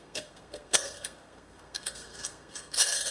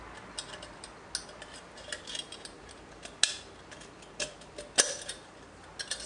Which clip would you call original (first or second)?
second